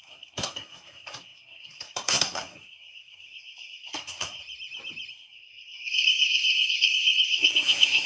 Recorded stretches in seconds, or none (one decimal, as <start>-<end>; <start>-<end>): 4.4-5.1